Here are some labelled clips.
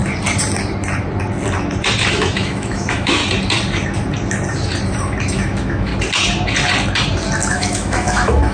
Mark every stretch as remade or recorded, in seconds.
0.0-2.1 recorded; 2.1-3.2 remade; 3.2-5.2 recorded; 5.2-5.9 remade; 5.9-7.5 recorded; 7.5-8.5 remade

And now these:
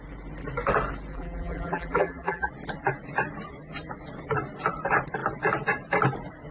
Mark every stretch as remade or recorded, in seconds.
0.0-1.1 recorded; 1.1-2.5 remade; 2.5-6.5 recorded

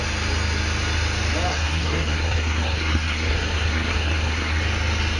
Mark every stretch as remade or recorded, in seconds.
0.0-1.5 recorded; 1.5-4.6 remade; 4.6-5.2 recorded

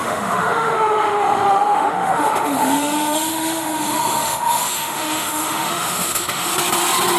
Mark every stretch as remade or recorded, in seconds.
0.0-6.5 remade; 6.5-7.2 recorded

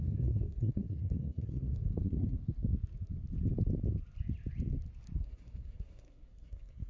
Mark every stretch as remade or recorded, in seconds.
0.0-2.4 remade; 2.4-5.2 recorded; 5.2-6.9 remade

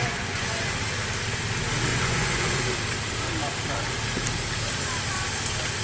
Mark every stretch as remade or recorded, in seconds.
0.0-0.7 remade; 0.7-1.9 recorded; 1.9-2.6 remade; 2.6-5.8 recorded

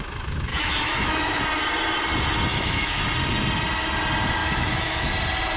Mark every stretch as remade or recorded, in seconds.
0.0-0.5 recorded; 0.5-1.4 remade; 1.4-2.5 recorded; 2.5-3.0 remade; 3.0-4.4 recorded; 4.4-5.1 remade; 5.1-5.6 recorded